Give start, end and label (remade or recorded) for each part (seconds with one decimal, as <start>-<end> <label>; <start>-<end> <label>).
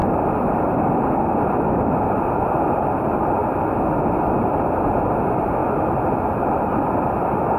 0.0-0.8 remade; 0.8-7.6 recorded